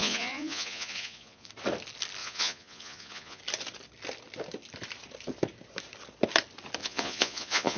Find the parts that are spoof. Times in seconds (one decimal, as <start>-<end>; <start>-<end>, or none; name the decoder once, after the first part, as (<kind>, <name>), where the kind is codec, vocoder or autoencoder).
0.0-1.5 (vocoder, Vocos); 2.2-3.4; 6.8-7.8